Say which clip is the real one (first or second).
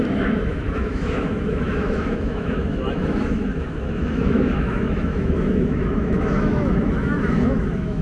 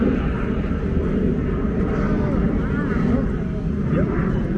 second